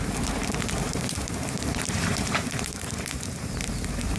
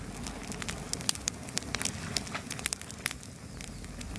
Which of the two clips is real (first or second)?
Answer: second